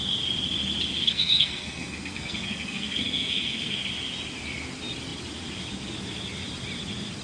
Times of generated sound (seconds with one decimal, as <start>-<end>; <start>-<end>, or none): 0.9-3.8

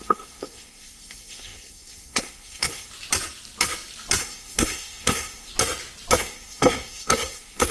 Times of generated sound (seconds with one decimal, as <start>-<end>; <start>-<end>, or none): 0.0-2.9; 4.2-5.5; 6.2-7.7

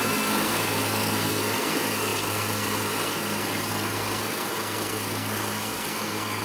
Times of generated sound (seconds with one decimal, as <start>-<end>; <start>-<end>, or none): 0.0-6.4

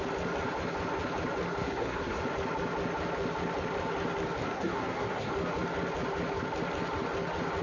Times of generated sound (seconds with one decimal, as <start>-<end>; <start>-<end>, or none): 1.6-2.2; 4.4-5.3